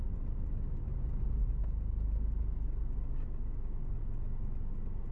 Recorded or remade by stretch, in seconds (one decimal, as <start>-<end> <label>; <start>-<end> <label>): 0.0-5.1 recorded